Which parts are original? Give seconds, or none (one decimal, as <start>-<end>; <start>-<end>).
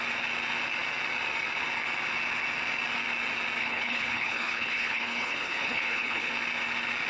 0.0-3.6; 6.3-7.1